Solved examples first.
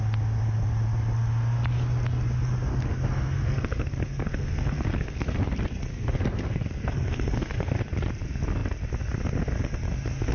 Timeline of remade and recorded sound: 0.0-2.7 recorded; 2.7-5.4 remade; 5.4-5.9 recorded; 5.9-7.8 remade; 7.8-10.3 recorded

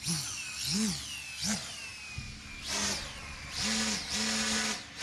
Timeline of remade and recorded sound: 0.0-5.0 recorded

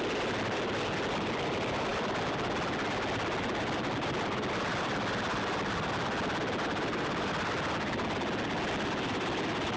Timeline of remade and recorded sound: 0.0-9.8 recorded

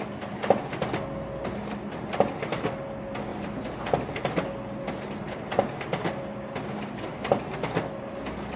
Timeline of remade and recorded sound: 0.0-8.6 recorded

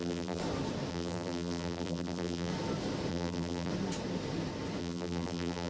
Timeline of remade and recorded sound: 0.0-0.4 remade; 0.4-0.9 recorded; 0.9-2.5 remade; 2.5-3.1 recorded; 3.1-3.7 remade; 3.7-4.8 recorded; 4.8-5.7 remade

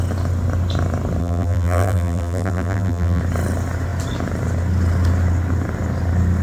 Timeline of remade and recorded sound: 0.0-1.2 recorded; 1.2-3.2 remade; 3.2-6.4 recorded